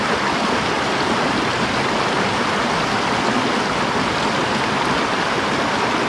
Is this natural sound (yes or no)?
yes